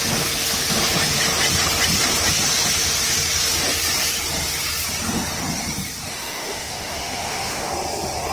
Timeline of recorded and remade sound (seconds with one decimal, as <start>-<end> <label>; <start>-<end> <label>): 0.0-6.1 recorded; 6.1-7.7 remade; 7.7-8.3 recorded